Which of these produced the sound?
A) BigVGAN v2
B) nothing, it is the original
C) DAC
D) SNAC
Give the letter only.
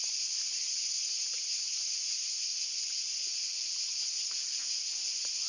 B